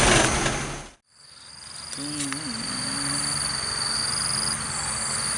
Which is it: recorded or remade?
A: recorded